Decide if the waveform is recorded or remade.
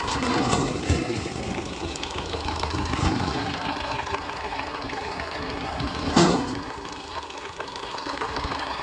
remade